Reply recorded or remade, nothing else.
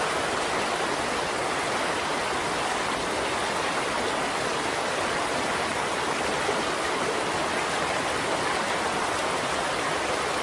recorded